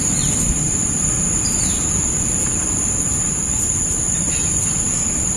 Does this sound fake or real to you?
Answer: fake